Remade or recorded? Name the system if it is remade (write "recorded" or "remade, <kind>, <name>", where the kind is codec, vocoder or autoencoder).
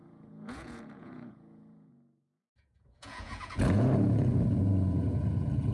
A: remade, vocoder, Vocos